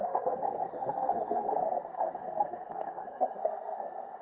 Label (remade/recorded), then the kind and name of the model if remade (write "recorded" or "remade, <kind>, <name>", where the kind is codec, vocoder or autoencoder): remade, codec, SNAC